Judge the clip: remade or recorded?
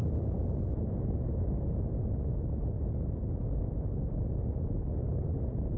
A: recorded